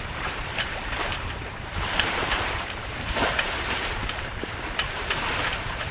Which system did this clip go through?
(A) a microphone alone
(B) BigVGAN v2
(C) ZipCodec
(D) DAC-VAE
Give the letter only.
B